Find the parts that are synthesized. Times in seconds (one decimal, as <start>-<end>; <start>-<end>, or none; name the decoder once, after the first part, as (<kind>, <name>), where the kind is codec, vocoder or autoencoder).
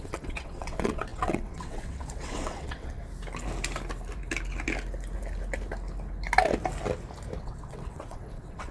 0.0-3.0 (vocoder, WaveNeXt); 7.4-8.7